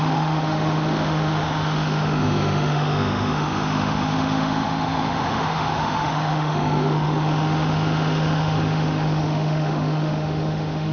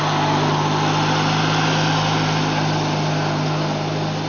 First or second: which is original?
second